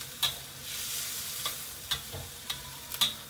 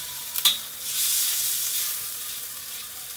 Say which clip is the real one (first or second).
first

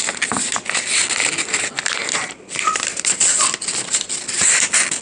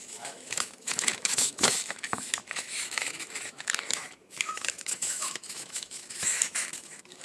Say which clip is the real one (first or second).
first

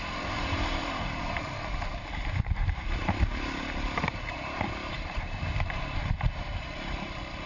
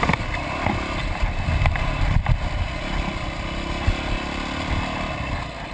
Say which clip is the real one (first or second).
second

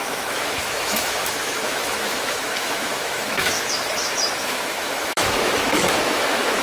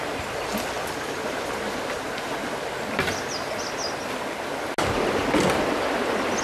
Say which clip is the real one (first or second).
second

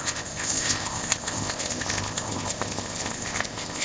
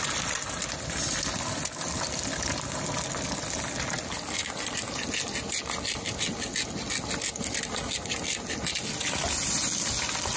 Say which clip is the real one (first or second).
second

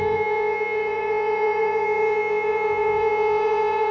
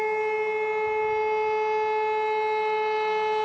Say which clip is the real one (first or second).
second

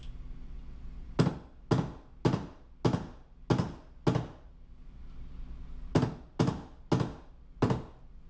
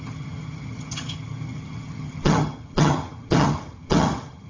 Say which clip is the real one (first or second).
first